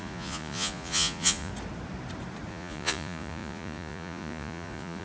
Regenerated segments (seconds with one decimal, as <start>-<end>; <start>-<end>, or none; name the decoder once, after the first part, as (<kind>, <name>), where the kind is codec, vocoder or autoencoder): 0.0-1.5 (vocoder, Vocos); 2.5-5.0